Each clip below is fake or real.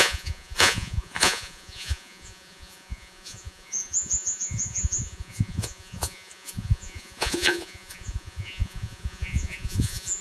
fake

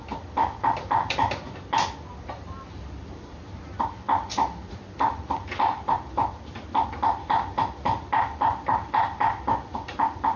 real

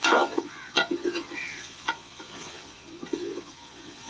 fake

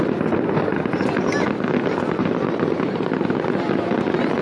real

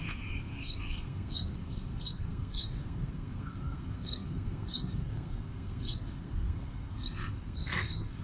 fake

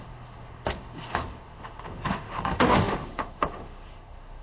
fake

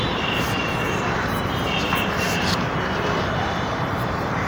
fake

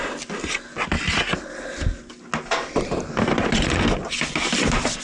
real